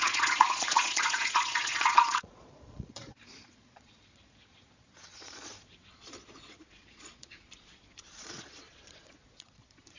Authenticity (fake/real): fake